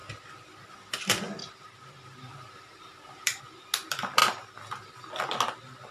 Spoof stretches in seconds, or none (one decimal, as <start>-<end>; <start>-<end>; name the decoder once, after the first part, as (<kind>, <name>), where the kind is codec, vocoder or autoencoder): 1.4-3.4 (vocoder, BigVGAN v2)